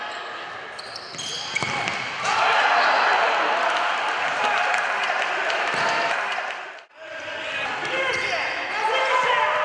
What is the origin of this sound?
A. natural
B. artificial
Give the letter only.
A